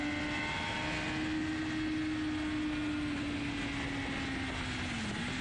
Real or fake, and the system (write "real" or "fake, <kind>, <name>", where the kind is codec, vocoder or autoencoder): real